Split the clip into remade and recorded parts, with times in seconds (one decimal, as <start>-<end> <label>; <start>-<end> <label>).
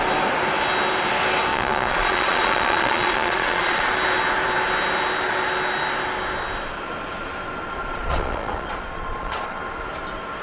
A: 0.0-1.5 recorded; 1.5-3.9 remade; 3.9-7.9 recorded; 7.9-9.6 remade; 9.6-10.4 recorded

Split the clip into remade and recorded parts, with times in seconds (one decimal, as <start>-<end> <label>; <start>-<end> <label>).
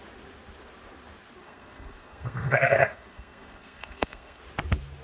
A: 0.0-1.4 recorded; 1.4-4.4 remade; 4.4-5.0 recorded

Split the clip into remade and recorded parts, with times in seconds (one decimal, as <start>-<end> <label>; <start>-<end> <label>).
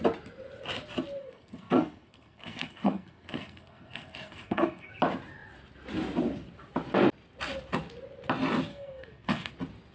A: 0.0-1.2 recorded; 1.2-4.9 remade; 4.9-8.7 recorded; 8.7-9.5 remade; 9.5-9.9 recorded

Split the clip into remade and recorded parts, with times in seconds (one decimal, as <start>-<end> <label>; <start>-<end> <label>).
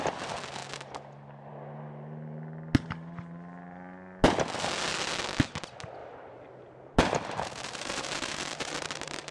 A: 0.0-6.0 recorded; 6.0-9.3 remade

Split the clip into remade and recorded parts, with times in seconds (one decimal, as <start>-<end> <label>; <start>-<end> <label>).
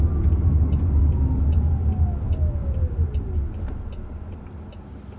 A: 0.0-5.2 recorded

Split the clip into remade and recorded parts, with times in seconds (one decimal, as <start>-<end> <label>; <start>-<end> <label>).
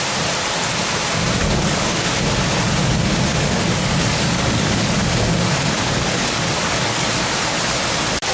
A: 0.0-1.4 recorded; 1.4-2.1 remade; 2.1-2.8 recorded; 2.8-7.1 remade; 7.1-8.3 recorded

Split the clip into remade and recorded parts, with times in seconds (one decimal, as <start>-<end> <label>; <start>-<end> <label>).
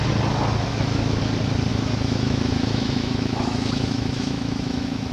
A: 0.0-0.7 recorded; 0.7-1.2 remade; 1.2-1.7 recorded; 1.7-5.1 remade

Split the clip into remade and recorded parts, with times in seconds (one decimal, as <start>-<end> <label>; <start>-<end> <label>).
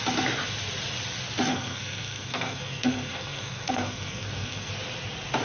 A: 0.0-1.5 recorded; 1.5-4.7 remade; 4.7-5.4 recorded